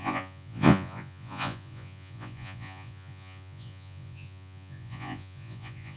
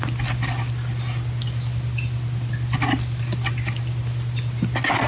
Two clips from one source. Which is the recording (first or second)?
second